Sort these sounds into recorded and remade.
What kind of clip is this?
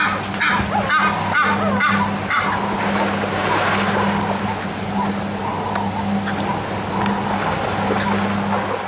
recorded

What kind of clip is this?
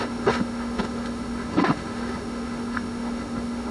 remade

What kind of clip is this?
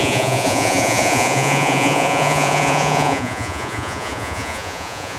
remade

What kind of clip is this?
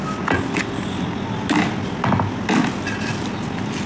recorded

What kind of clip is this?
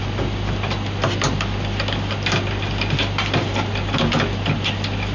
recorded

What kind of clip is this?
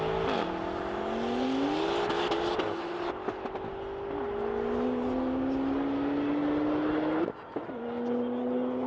recorded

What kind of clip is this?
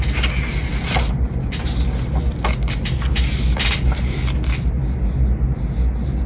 recorded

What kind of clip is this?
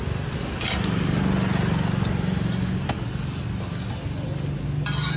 recorded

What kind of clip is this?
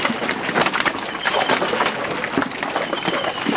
recorded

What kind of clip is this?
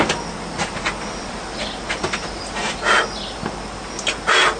recorded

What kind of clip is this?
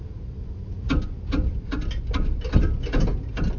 recorded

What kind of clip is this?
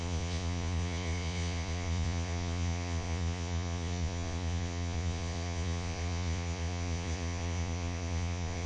remade